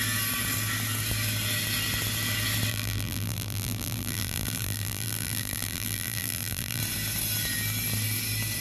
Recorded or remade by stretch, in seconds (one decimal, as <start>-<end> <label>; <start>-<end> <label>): 0.0-2.7 recorded; 2.7-6.8 remade; 6.8-8.6 recorded